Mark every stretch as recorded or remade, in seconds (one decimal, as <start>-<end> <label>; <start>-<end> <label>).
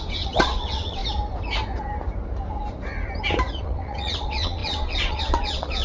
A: 0.0-1.0 remade; 1.0-3.6 recorded; 3.6-5.8 remade